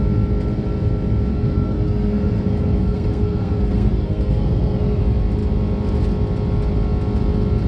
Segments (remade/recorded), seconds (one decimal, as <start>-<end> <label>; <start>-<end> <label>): 0.0-1.3 recorded; 1.3-5.0 remade; 5.0-7.7 recorded